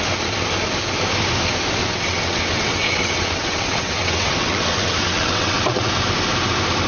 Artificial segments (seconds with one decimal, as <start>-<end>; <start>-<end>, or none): 1.8-5.9